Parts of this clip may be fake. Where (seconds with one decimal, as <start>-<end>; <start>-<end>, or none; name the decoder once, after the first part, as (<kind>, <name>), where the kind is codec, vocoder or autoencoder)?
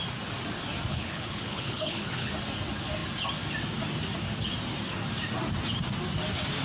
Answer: 0.9-2.3 (codec, HILCodec)